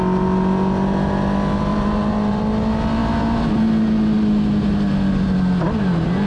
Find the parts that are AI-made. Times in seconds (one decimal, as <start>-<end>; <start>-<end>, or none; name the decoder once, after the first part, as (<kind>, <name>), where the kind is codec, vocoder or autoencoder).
1.7-2.4 (vocoder, BigVGAN v2)